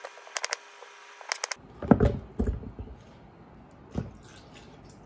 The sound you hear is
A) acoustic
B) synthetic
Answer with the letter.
A